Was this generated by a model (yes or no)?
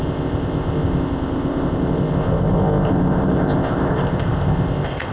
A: yes